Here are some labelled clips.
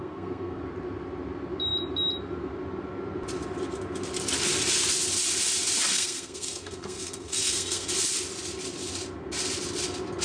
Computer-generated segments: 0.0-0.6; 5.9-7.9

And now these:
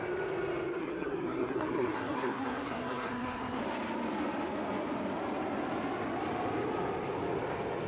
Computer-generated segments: 0.8-3.6

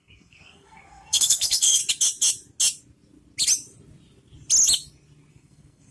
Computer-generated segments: 0.0-1.8; 5.3-5.9

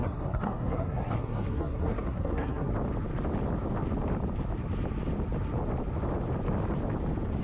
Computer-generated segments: 0.0-2.7

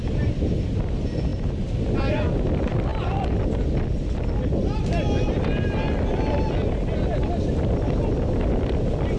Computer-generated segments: none

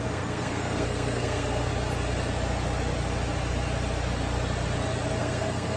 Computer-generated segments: 0.0-1.7; 5.2-5.8